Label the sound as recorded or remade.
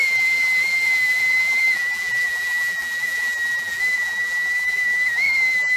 remade